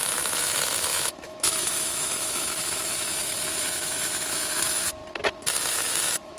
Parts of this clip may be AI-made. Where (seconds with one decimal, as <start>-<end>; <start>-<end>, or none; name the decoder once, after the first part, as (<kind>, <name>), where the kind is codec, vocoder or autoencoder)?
0.0-5.0 (autoencoder, DAC-VAE); 5.7-6.4

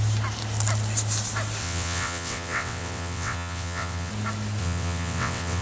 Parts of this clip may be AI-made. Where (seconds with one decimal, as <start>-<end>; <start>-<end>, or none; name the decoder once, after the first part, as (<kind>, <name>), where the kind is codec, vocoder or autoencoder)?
1.6-4.1 (vocoder, WaveNeXt); 4.6-5.6

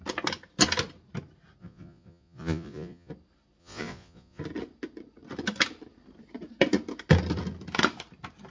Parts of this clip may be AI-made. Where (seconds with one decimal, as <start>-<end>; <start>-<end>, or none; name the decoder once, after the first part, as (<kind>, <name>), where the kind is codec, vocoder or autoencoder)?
1.6-3.1 (vocoder, Vocos); 3.6-4.4

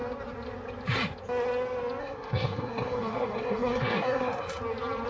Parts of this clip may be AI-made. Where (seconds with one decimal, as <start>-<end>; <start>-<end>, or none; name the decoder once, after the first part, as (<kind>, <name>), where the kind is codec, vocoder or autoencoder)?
2.0-4.6 (codec, SNAC)

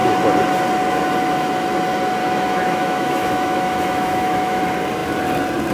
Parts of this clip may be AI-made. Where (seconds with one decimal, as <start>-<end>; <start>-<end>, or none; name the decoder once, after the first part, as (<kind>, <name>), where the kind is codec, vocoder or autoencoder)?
2.2-4.6 (autoencoder, DAC-VAE)

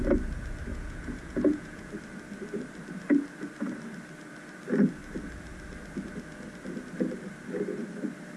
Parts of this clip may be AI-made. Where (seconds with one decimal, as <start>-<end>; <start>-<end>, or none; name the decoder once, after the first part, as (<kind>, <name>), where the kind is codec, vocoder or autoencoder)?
0.7-1.9 (vocoder, Vocos)

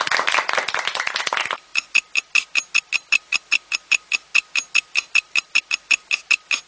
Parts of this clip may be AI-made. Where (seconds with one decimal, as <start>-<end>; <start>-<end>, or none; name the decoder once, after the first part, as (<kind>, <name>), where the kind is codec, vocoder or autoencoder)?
none